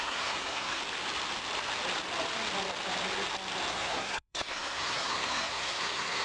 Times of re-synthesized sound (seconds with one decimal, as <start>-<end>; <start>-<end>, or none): 0.0-0.8; 3.7-6.2